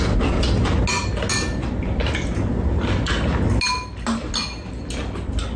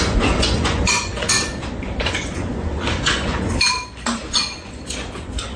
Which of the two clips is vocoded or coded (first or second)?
second